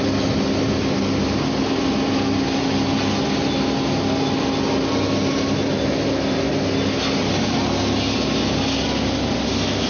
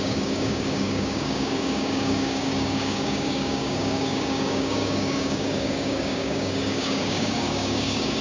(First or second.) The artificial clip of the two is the second